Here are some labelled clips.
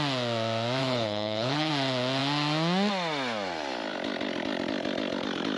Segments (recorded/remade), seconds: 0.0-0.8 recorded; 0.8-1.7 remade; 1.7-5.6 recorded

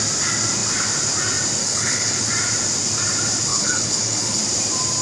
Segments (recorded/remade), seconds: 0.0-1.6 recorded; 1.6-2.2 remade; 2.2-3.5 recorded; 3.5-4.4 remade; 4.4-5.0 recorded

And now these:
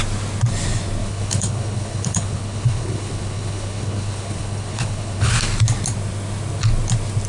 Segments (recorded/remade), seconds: 0.0-1.0 recorded; 1.0-5.3 remade; 5.3-7.3 recorded